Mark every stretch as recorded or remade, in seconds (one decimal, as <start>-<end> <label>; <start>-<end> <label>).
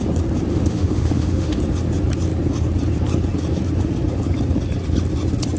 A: 0.0-0.5 recorded; 0.5-1.6 remade; 1.6-5.6 recorded